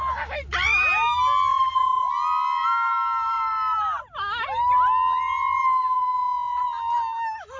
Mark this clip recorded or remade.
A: recorded